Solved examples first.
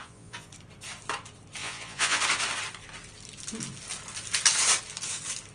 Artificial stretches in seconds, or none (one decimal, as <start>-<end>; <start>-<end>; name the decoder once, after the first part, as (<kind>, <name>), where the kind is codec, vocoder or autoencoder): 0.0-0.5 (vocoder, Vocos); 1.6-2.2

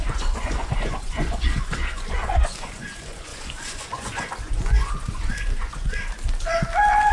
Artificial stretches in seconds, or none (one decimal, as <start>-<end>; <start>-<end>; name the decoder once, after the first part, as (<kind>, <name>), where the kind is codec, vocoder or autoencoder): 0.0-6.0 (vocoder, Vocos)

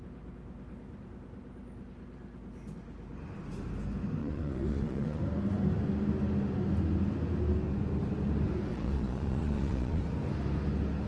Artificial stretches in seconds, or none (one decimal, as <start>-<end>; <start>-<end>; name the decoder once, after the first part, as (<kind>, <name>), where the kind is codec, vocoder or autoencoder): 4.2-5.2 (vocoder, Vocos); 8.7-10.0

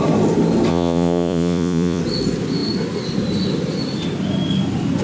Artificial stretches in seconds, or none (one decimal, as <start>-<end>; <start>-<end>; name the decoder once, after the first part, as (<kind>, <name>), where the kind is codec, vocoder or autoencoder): 0.7-2.0 (vocoder, Vocos)

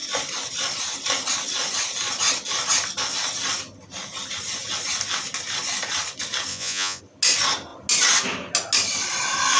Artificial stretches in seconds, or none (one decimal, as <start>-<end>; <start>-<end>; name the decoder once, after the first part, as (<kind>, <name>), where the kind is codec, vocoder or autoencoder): 6.5-7.0 (vocoder, Vocos)

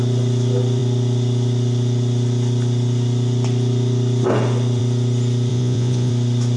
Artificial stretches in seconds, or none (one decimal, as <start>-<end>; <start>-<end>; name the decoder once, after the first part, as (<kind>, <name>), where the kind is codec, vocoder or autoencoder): 5.5-6.1 (vocoder, Vocos)

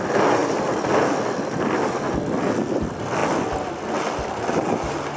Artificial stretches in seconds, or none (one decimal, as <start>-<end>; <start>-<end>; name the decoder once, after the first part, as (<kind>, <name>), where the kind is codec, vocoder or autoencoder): none

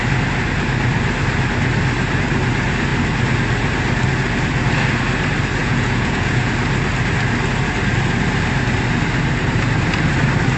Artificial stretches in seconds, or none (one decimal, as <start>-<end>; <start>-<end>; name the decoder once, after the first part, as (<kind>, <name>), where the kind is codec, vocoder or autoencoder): 5.6-6.5 (vocoder, Vocos)